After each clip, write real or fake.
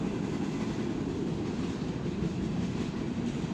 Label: real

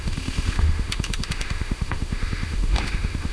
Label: fake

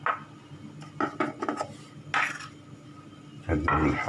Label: real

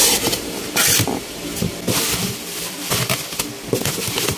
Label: real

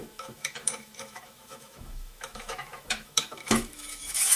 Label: fake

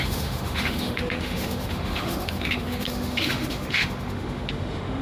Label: fake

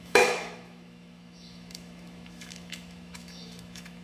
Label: fake